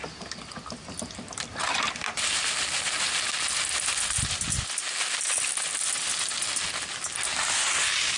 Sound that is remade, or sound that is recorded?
recorded